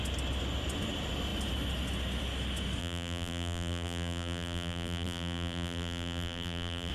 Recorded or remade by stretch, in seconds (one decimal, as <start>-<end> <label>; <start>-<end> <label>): 0.0-2.8 recorded; 2.8-6.9 remade